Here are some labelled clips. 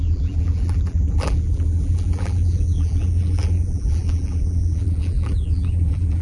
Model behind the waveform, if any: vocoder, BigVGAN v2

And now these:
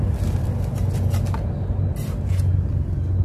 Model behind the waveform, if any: none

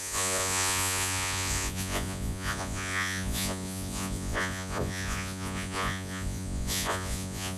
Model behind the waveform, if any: vocoder, Vocos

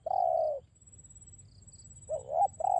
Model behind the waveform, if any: none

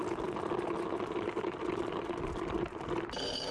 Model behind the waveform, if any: none